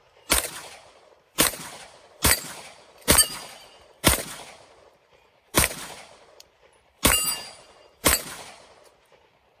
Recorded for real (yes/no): no